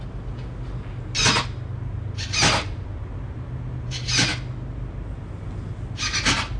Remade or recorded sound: recorded